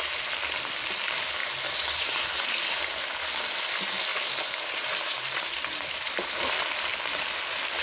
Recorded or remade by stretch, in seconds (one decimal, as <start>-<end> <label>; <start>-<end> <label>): 0.0-1.4 recorded; 1.4-2.6 remade; 2.6-4.1 recorded; 4.1-6.4 remade; 6.4-7.8 recorded